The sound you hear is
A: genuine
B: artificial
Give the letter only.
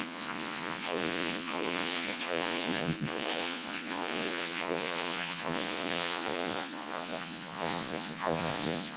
B